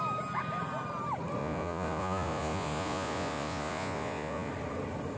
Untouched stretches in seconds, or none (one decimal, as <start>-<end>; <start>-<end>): 0.0-1.4; 4.5-5.2